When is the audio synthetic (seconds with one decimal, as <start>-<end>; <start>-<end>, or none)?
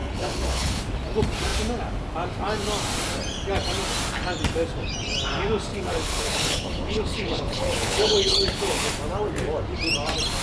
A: 0.0-0.8; 5.7-8.9